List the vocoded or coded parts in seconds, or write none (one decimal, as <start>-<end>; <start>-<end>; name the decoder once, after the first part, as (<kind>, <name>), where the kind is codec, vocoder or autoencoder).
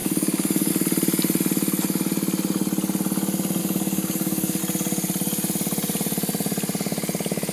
0.0-0.7 (codec, DAC); 3.6-4.6